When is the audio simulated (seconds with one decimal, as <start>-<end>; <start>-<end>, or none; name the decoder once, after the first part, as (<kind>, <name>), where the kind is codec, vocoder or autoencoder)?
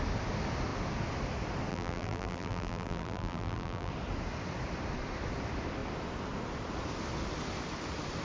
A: 1.7-3.9 (vocoder, BigVGAN v2)